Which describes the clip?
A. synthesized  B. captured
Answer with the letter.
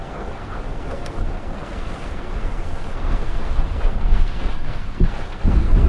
A